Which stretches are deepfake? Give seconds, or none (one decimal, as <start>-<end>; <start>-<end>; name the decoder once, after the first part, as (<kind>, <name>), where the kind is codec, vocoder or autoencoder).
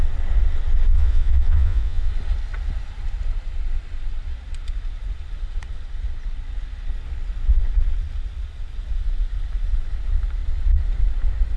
0.9-2.1 (vocoder, Vocos)